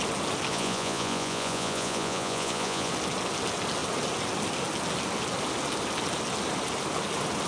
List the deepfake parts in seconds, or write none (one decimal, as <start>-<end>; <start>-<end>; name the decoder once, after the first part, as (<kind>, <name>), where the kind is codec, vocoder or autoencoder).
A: 0.5-2.9 (vocoder, Vocos)